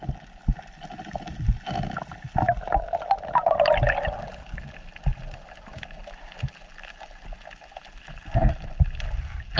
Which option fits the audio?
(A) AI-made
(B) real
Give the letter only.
B